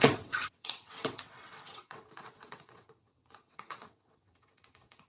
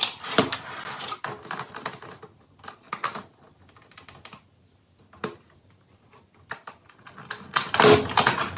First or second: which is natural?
second